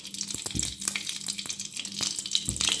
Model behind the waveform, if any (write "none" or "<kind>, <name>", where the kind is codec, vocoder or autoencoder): none